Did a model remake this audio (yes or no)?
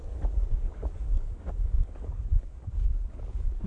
yes